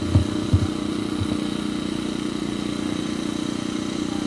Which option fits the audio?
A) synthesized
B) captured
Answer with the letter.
B